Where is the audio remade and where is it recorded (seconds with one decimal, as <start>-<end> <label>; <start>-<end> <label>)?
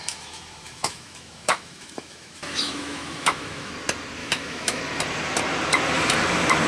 0.0-3.7 remade; 3.7-4.2 recorded; 4.2-4.8 remade; 4.8-6.7 recorded